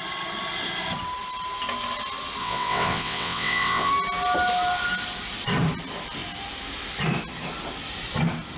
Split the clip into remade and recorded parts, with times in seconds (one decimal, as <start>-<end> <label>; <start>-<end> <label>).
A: 0.0-2.4 recorded; 2.4-3.9 remade; 3.9-8.6 recorded